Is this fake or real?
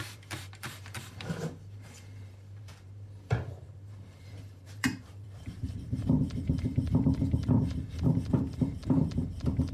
fake